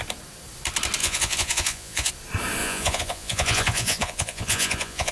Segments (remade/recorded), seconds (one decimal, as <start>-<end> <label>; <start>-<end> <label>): 0.0-1.0 recorded; 1.0-2.1 remade; 2.1-2.6 recorded; 2.6-5.1 remade